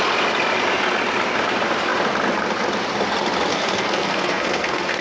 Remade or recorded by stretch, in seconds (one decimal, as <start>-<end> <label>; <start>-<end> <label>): 0.0-3.5 recorded; 3.5-5.0 remade